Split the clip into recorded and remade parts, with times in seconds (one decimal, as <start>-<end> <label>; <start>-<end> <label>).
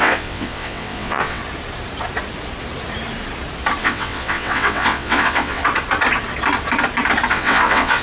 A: 0.0-1.4 remade; 1.4-3.8 recorded; 3.8-5.6 remade; 5.6-7.3 recorded; 7.3-8.0 remade